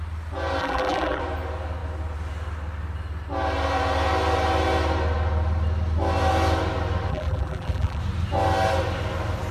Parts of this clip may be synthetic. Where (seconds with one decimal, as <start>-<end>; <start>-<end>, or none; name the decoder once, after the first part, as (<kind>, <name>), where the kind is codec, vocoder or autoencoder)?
0.6-1.2 (vocoder, BigVGAN v2); 7.1-8.0